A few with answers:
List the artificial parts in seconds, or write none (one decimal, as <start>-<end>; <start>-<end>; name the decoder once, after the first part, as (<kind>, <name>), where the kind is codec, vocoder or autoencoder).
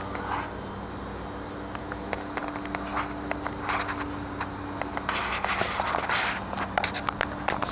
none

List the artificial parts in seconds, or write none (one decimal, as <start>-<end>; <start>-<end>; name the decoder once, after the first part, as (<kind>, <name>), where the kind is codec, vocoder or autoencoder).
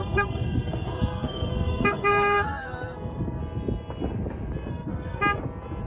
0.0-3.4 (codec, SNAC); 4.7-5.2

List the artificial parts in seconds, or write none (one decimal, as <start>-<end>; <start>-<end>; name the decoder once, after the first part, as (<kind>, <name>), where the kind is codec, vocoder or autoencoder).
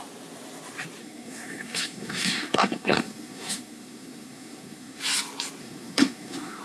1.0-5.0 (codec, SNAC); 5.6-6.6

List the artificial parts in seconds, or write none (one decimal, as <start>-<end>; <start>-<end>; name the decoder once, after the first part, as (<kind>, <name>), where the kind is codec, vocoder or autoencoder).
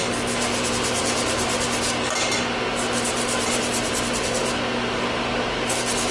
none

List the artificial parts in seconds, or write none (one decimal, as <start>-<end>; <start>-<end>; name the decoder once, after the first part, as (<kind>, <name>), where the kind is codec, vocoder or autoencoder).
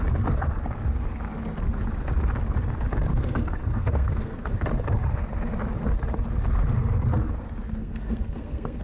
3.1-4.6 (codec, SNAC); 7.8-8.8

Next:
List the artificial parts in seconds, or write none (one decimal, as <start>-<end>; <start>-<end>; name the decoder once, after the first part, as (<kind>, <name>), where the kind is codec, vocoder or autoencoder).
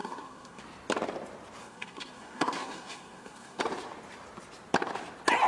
0.0-0.6 (codec, SNAC); 1.6-3.6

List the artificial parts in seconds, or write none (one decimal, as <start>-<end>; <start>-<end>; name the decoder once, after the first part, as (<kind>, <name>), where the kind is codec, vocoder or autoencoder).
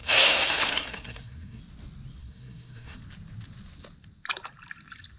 0.0-1.6 (codec, SNAC); 2.2-3.0